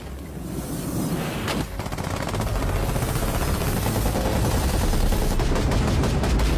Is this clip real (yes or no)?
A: yes